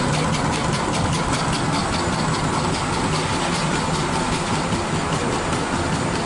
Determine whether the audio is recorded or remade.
recorded